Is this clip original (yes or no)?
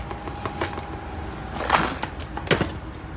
yes